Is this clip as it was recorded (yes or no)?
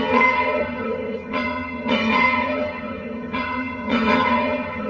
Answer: no